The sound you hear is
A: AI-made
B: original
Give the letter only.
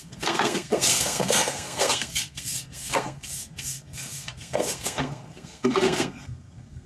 A